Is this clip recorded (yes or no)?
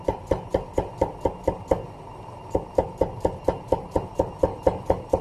yes